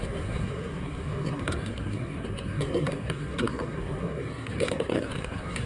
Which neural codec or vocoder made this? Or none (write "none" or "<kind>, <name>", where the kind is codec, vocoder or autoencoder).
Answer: codec, SNAC